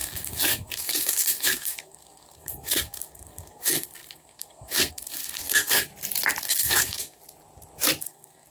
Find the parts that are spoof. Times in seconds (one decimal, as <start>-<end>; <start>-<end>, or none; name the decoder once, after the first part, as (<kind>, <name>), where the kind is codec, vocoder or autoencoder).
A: 0.0-5.9 (codec, SNAC); 6.4-7.2; 8.0-8.5